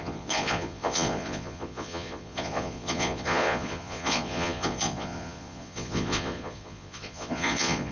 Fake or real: fake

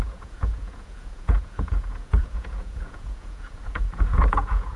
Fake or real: fake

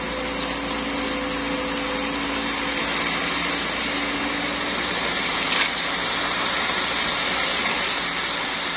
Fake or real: real